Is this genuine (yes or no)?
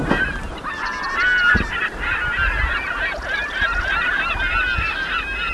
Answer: yes